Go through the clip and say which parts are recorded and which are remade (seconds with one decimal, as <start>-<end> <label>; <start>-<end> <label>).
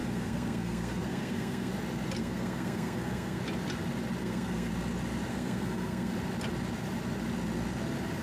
0.0-1.7 remade; 1.7-2.2 recorded; 2.2-3.4 remade; 3.4-4.2 recorded; 4.2-4.7 remade; 4.7-5.3 recorded; 5.3-6.1 remade; 6.1-8.2 recorded